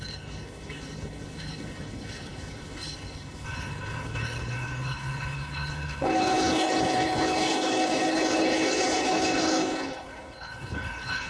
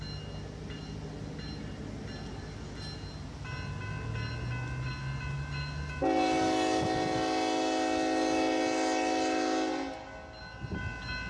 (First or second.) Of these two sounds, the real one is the second